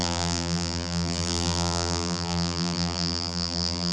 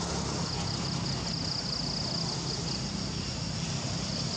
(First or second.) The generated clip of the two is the first